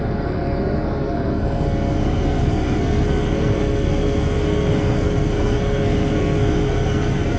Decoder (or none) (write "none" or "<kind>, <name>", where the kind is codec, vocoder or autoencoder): codec, SNAC